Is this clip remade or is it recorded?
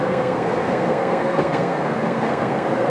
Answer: remade